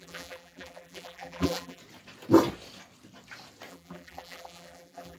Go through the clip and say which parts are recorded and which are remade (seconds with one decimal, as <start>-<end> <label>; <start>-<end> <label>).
0.0-1.8 remade; 1.8-3.7 recorded; 3.7-5.2 remade